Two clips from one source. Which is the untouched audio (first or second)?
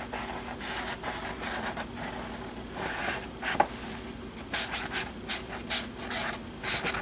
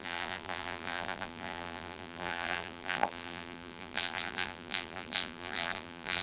first